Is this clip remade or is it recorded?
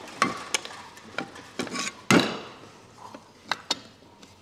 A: recorded